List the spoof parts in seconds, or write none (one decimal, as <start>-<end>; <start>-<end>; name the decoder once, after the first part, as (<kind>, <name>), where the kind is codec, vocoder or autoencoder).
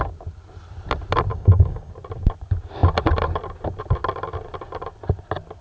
1.3-1.9 (codec, DAC)